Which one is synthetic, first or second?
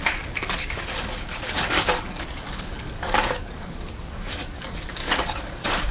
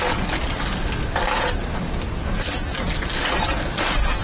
first